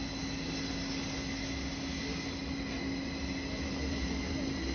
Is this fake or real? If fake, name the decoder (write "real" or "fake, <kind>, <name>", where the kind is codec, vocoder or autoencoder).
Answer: real